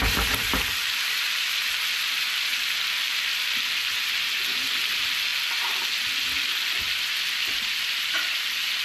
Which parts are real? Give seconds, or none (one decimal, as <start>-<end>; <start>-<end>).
2.5-3.1; 5.3-6.8